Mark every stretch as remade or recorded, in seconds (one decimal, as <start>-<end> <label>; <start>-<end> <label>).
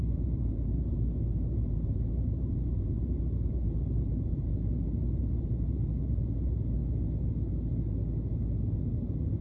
0.0-6.8 remade; 6.8-8.9 recorded; 8.9-9.4 remade